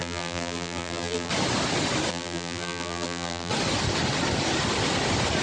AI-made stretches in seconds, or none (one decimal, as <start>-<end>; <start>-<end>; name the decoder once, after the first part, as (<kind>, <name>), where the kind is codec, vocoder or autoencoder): 0.0-1.3 (vocoder, BigVGAN v2); 2.1-3.5

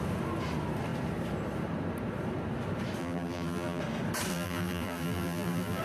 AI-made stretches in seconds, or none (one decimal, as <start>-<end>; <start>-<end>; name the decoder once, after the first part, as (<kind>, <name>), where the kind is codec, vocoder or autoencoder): 3.0-3.8 (vocoder, BigVGAN v2); 4.3-5.8